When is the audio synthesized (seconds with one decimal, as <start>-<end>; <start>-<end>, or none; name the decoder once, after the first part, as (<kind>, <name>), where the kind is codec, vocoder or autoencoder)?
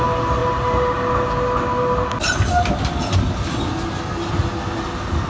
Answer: none